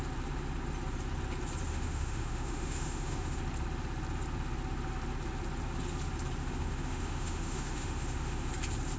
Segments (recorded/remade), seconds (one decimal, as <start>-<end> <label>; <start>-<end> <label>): 0.0-1.7 recorded; 1.7-3.4 remade; 3.4-6.4 recorded; 6.4-8.5 remade; 8.5-9.0 recorded